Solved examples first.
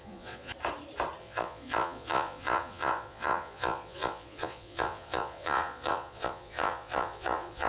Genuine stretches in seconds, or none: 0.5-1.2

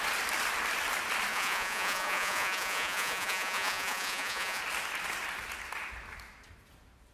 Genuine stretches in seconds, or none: 0.0-1.3; 4.6-7.1

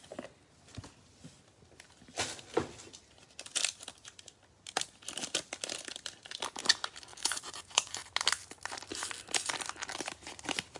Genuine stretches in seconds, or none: 0.0-7.1; 8.1-10.8

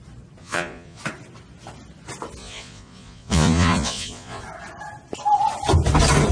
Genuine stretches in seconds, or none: 0.0-0.4; 1.0-2.4; 4.4-6.3

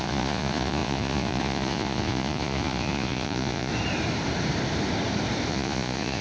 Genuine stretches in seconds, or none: 3.7-5.5

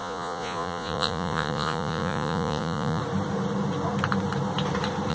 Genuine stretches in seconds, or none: 3.0-5.1

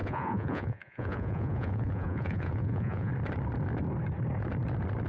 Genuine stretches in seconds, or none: 3.1-5.1